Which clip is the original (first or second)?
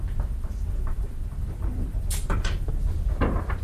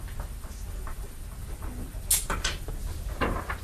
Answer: second